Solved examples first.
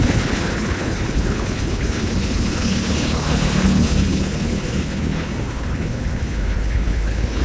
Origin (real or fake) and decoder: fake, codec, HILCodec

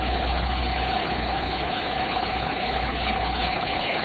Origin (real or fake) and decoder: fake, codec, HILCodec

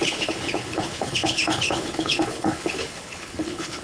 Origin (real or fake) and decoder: fake, codec, HILCodec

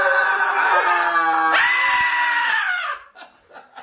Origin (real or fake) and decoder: real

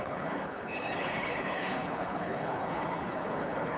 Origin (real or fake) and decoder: fake, codec, HILCodec